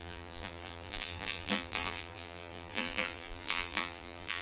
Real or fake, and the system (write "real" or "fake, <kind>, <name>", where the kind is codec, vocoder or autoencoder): fake, vocoder, BigVGAN v2